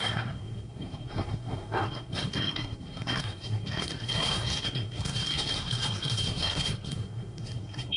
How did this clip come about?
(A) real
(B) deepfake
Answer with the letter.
B